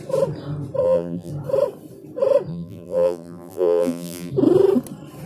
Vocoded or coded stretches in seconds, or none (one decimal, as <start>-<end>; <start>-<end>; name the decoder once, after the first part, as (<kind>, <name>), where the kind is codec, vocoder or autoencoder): 0.8-1.3 (vocoder, BigVGAN v2); 2.5-4.3